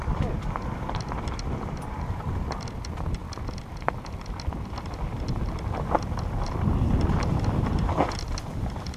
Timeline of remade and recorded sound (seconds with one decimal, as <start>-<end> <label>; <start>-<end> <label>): 0.0-9.0 recorded